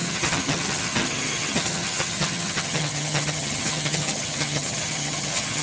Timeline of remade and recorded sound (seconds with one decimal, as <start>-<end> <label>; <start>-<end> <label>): 0.0-5.6 remade